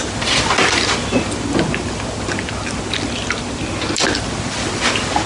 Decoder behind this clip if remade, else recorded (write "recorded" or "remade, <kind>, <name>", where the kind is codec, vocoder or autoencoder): recorded